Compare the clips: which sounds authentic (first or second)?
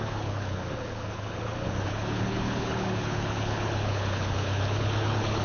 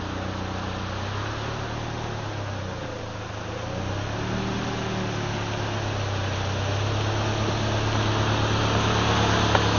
second